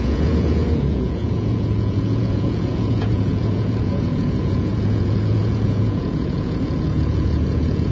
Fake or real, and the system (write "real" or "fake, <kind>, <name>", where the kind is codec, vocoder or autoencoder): fake, vocoder, Vocos